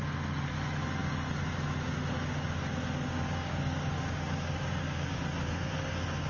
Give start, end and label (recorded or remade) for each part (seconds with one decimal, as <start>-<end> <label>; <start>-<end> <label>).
0.0-3.1 recorded; 3.1-5.2 remade; 5.2-6.3 recorded